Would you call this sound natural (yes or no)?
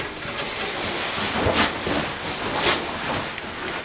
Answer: yes